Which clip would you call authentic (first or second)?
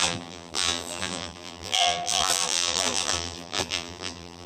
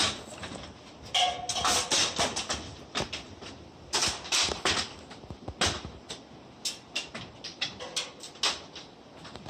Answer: second